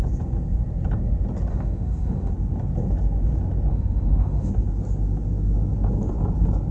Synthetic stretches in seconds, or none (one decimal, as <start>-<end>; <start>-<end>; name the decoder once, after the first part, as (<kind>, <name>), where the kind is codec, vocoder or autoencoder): 1.5-2.3 (autoencoder, DAC-VAE); 3.7-4.5